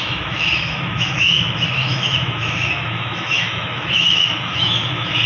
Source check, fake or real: fake